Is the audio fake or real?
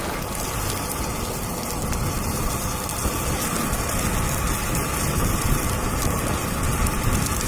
real